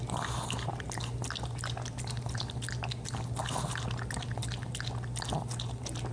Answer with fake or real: real